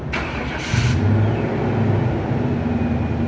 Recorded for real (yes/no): yes